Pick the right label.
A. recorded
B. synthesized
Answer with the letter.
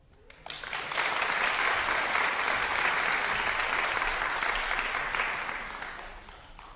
A